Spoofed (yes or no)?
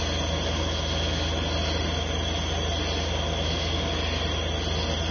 no